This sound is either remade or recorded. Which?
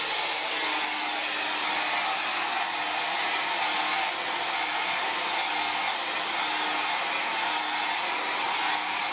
recorded